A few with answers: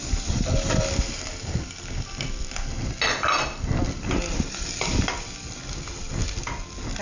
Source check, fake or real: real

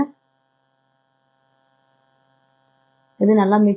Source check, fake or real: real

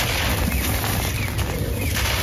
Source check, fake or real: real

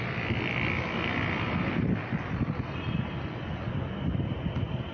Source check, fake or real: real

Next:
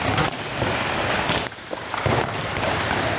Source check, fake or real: real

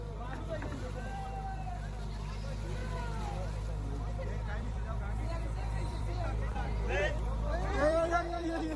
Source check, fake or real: fake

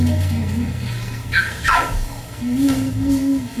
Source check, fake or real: fake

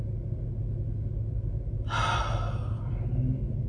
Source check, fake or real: real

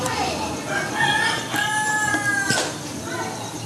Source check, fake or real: real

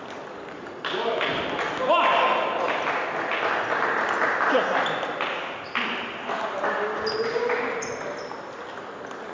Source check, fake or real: real